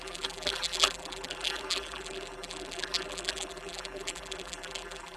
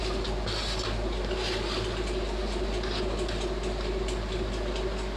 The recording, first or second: second